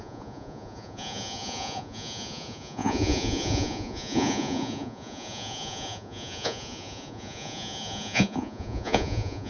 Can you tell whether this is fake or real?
fake